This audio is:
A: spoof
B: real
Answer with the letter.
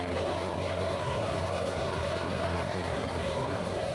A